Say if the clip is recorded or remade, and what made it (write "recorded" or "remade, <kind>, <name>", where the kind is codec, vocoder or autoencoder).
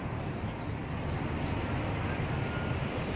recorded